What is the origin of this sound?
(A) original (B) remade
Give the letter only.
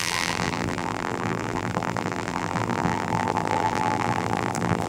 B